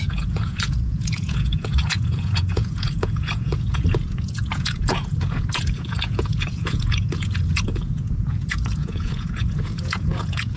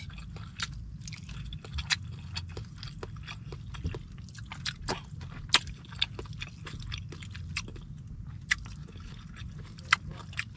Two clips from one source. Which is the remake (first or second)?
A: first